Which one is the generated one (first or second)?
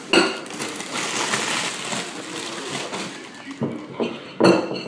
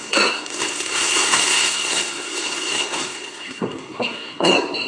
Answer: second